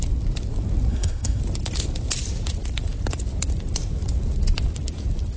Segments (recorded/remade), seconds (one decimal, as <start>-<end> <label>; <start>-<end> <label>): 0.0-0.9 recorded; 0.9-1.4 remade; 1.4-5.4 recorded